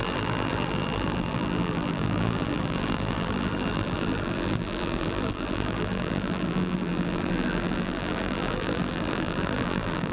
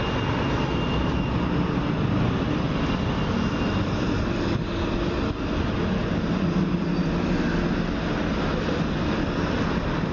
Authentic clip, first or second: second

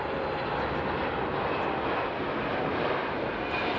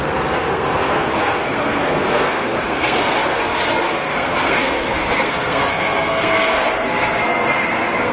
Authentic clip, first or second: first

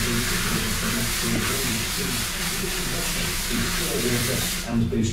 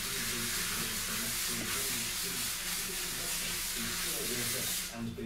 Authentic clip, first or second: second